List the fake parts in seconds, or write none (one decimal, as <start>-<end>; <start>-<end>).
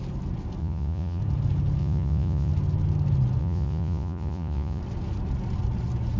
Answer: 0.6-1.2; 1.8-2.5; 3.4-4.8